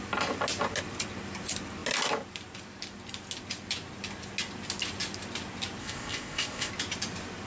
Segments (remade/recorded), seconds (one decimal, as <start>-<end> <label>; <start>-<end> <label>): 0.0-5.8 recorded; 5.8-6.7 remade; 6.7-7.5 recorded